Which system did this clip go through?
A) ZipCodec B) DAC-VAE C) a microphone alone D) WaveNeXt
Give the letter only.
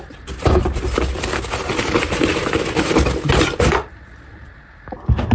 C